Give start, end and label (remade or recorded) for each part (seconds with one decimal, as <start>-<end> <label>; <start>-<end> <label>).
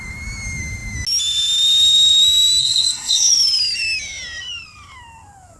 0.0-2.6 recorded; 2.6-3.3 remade; 3.3-5.6 recorded